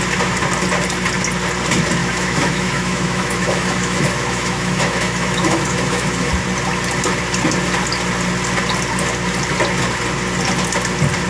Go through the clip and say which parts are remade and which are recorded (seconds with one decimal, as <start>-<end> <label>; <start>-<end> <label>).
0.0-2.0 recorded; 2.0-6.3 remade; 6.3-11.3 recorded